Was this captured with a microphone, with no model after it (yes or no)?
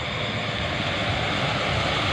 yes